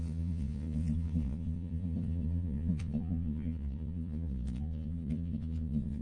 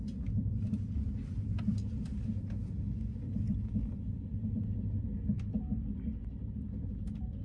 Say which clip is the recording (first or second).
second